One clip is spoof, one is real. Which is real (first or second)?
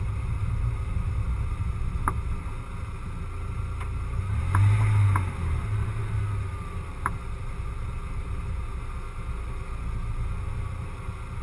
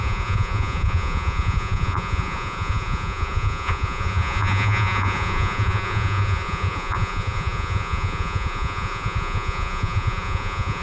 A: first